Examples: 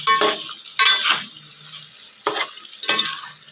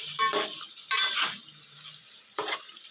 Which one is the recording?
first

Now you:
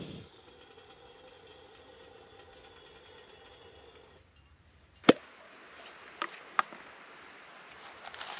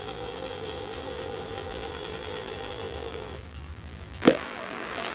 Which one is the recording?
first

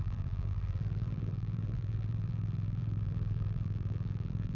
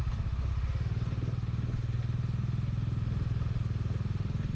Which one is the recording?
second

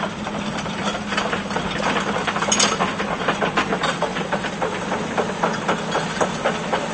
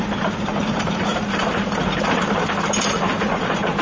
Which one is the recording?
first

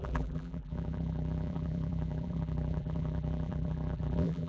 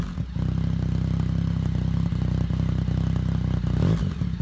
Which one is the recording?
second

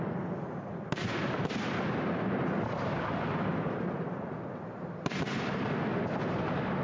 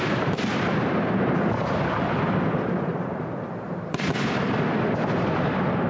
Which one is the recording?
first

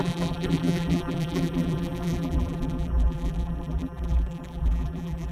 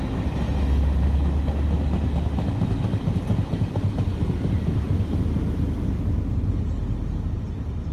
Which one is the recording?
second